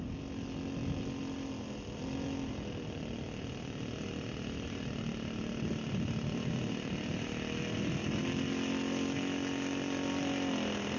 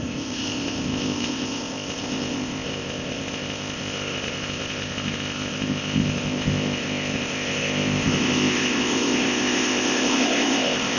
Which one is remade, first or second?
second